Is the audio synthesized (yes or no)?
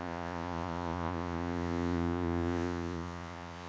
yes